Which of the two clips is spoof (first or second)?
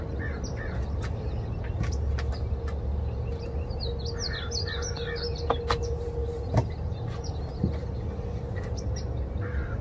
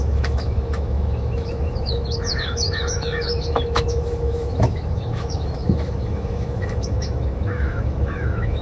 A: second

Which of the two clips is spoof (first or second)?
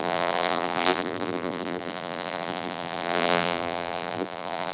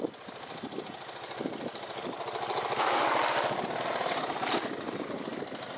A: first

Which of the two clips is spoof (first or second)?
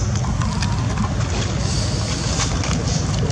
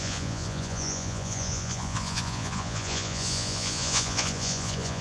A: second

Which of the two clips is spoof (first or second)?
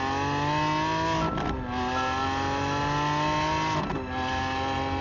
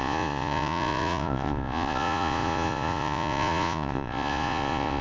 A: second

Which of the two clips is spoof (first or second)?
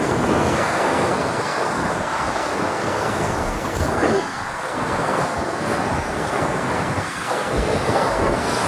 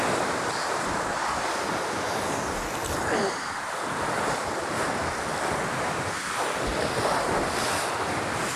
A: first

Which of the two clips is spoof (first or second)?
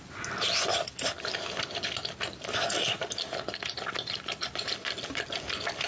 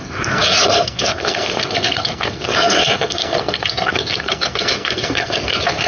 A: second